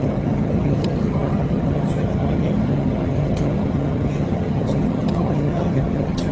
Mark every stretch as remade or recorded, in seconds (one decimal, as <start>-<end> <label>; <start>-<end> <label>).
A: 0.0-6.3 remade